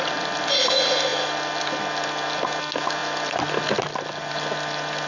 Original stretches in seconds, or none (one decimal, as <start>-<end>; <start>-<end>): 0.0-5.1